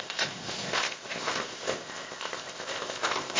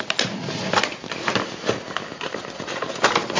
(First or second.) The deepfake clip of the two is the first